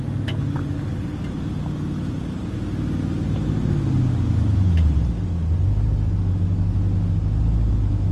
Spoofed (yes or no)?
no